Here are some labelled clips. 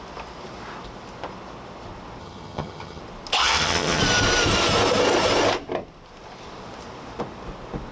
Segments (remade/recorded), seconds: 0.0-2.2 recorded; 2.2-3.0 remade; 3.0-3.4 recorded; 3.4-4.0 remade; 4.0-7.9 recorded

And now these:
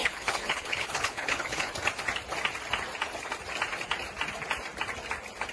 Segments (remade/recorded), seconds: 0.0-1.7 remade; 1.7-5.5 recorded

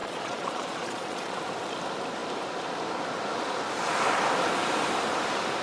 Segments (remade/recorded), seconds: 0.0-1.4 remade; 1.4-5.6 recorded

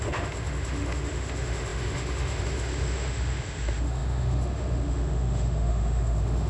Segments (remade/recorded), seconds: 0.0-6.5 remade

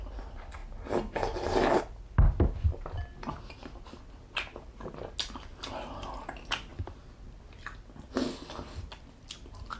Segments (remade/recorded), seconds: 0.0-9.8 recorded